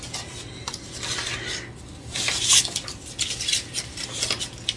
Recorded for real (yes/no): yes